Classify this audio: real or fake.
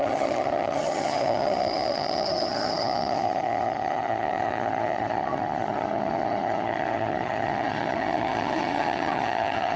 fake